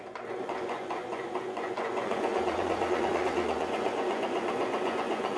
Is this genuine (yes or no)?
no